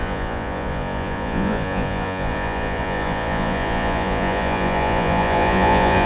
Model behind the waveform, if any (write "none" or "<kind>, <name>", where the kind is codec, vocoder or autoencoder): vocoder, Vocos